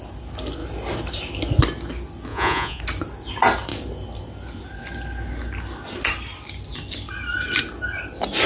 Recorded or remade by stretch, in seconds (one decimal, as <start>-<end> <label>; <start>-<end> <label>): 0.0-2.3 recorded; 2.3-2.8 remade; 2.8-8.5 recorded